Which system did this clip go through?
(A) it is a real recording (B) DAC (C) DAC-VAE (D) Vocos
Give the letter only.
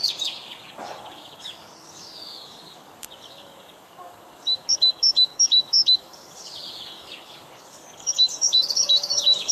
B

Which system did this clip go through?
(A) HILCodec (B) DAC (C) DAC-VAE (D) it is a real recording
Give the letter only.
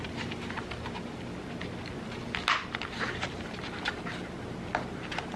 D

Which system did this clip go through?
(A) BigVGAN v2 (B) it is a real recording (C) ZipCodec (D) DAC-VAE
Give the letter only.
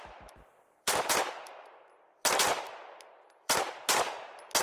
A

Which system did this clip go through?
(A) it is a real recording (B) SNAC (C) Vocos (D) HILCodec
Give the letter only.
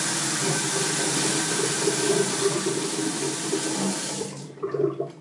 A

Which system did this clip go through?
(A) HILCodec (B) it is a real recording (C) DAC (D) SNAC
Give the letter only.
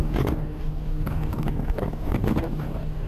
C